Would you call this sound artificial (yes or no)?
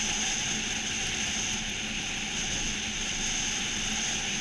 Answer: no